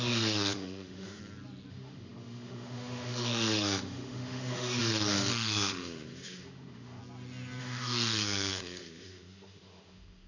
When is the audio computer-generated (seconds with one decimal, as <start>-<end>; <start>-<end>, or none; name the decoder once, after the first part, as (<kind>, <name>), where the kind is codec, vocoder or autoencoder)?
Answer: 0.0-1.2 (autoencoder, DAC-VAE); 1.7-7.0; 7.6-10.3